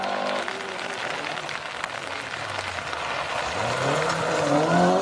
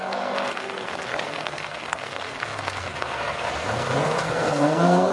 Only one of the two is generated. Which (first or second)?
second